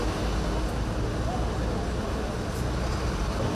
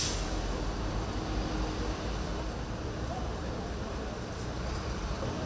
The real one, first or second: first